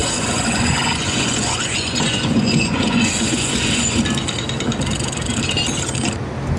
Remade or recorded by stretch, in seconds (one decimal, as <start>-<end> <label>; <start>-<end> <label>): 0.0-4.0 remade; 4.0-6.6 recorded